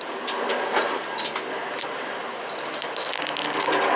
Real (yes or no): yes